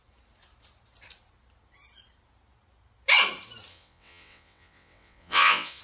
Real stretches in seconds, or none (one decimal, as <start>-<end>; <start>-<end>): 0.0-3.7